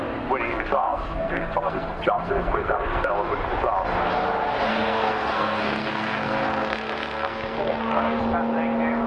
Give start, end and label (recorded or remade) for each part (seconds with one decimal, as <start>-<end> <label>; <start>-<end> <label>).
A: 0.0-0.5 recorded; 0.5-3.1 remade; 3.1-4.7 recorded; 4.7-8.2 remade; 8.2-9.1 recorded